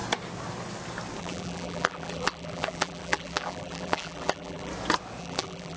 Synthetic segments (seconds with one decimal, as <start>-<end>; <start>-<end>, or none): 1.2-4.7; 5.2-5.8